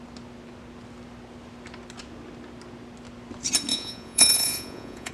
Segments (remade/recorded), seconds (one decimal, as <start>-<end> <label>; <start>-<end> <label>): 0.0-3.7 recorded; 3.7-5.1 remade